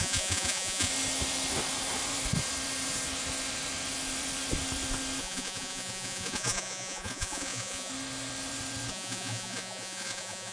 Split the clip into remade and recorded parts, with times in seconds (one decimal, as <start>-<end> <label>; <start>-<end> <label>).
0.0-0.9 remade; 0.9-5.2 recorded; 5.2-7.9 remade; 7.9-8.9 recorded; 8.9-10.5 remade